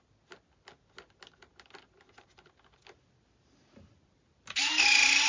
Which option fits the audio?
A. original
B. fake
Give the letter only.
A